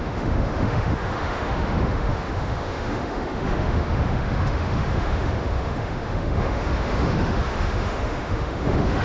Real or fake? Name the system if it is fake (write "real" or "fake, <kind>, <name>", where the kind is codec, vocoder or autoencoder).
fake, autoencoder, DAC-VAE